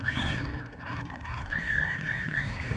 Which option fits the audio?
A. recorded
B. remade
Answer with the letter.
B